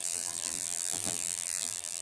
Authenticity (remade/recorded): remade